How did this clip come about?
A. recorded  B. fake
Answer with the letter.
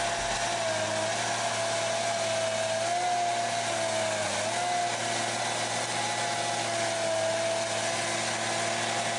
A